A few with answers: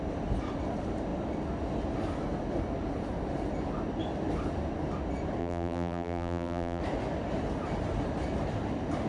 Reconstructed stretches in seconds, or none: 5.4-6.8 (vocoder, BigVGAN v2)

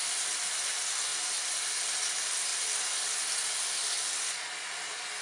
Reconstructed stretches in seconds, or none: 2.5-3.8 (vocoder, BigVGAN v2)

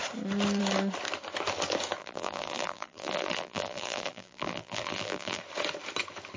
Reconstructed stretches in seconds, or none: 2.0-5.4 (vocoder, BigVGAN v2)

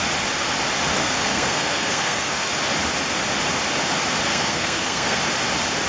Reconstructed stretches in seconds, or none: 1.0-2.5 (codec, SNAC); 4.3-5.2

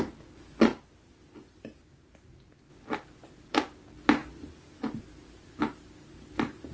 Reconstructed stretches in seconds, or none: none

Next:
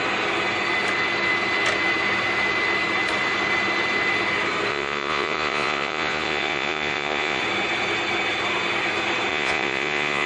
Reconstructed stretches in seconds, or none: 4.7-7.4 (vocoder, Vocos); 9.3-10.3

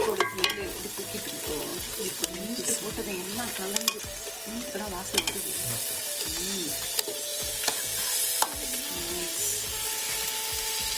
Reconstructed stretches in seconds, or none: 7.3-8.1 (vocoder, Vocos)